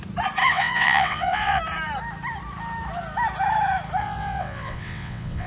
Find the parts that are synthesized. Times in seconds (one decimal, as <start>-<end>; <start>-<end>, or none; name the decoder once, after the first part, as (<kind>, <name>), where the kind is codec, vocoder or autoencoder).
0.4-1.6 (vocoder, WaveNeXt); 4.0-5.5